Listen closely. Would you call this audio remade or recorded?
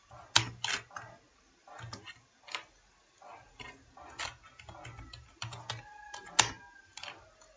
recorded